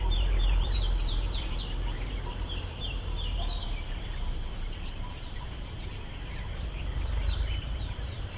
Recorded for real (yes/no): no